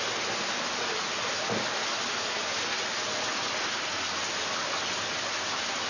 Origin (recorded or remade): recorded